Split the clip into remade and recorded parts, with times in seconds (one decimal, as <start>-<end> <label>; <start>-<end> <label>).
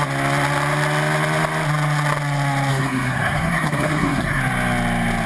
0.0-2.7 recorded; 2.7-4.4 remade; 4.4-5.3 recorded